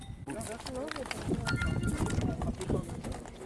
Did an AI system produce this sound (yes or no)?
no